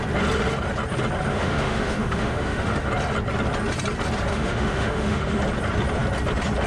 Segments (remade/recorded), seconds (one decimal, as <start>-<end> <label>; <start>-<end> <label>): 0.0-1.3 recorded; 1.3-2.9 remade; 2.9-4.3 recorded; 4.3-5.4 remade; 5.4-6.7 recorded